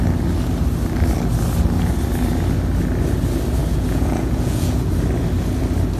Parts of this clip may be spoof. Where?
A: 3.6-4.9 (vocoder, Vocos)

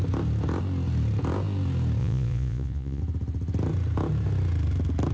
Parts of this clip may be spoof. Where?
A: 2.0-3.0 (vocoder, Vocos)

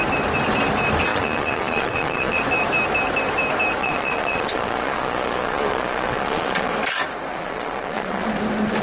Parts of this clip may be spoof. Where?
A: 1.1-2.4 (vocoder, Vocos); 3.8-6.7; 7.3-8.3

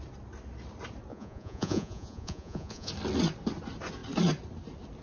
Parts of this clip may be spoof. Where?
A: 1.1-2.9 (vocoder, Vocos)

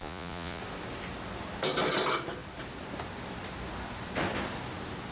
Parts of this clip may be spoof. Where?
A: 0.0-0.6 (vocoder, Vocos)

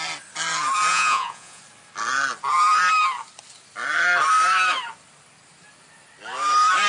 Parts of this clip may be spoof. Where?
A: 0.9-1.6 (vocoder, Vocos)